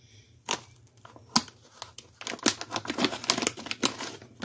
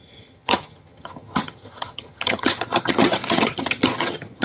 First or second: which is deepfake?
second